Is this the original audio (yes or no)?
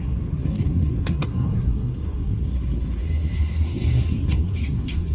no